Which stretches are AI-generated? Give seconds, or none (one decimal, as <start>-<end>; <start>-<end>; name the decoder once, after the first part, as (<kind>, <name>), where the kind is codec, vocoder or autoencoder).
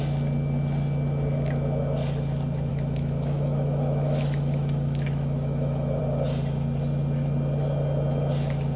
2.7-6.0 (autoencoder, DAC-VAE)